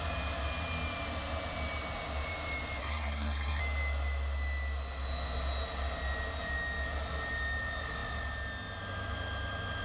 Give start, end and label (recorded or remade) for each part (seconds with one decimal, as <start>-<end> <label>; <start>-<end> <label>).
0.0-2.8 recorded; 2.8-3.6 remade; 3.6-9.8 recorded

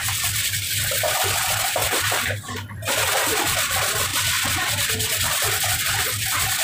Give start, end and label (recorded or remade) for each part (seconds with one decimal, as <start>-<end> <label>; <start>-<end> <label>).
0.0-6.6 remade